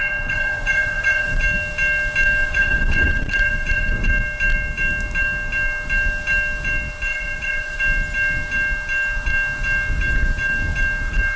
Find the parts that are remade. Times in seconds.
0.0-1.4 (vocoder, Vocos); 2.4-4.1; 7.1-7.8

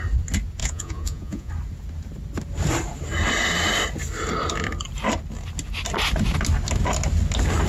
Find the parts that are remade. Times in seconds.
0.6-1.5 (vocoder, Vocos)

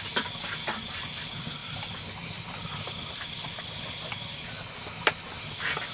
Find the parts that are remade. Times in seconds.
none

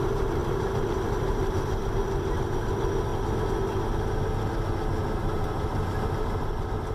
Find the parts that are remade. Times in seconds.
0.0-3.1 (vocoder, BigVGAN v2); 5.2-6.9

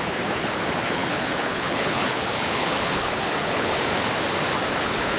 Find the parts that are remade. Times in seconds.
0.0-3.9 (codec, HILCodec); 4.8-5.2

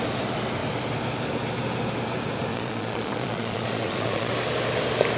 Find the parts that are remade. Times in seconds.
2.5-4.3 (vocoder, Vocos)

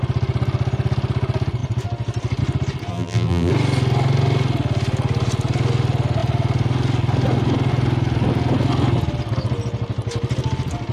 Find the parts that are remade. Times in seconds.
2.9-3.5 (vocoder, BigVGAN v2)

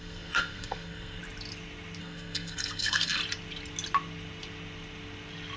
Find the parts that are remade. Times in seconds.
0.0-1.2 (codec, SNAC); 2.0-3.2